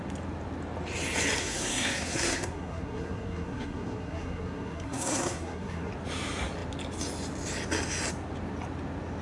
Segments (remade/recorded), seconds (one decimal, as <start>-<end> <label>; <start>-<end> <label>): 0.0-1.4 recorded; 1.4-5.9 remade; 5.9-9.2 recorded